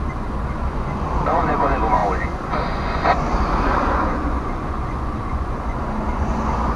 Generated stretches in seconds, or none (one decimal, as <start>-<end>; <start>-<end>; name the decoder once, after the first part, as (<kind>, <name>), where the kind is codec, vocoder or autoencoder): 0.0-6.8 (vocoder, Vocos)

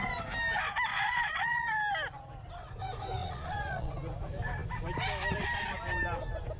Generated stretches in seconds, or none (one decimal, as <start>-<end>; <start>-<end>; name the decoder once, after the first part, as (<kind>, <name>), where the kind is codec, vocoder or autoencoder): 0.9-1.7 (vocoder, Vocos); 3.2-3.9

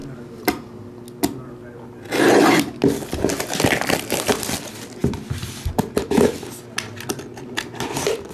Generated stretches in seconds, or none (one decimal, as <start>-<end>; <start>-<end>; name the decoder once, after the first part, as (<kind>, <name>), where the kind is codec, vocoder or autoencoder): none